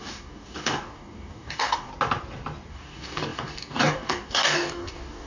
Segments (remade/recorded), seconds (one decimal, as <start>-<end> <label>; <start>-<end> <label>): 0.0-1.9 remade; 1.9-2.7 recorded; 2.7-5.3 remade